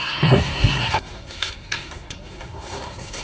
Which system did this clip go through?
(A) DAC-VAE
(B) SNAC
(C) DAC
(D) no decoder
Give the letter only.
B